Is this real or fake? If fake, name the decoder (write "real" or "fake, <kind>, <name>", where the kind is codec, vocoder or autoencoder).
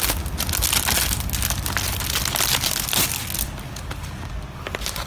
real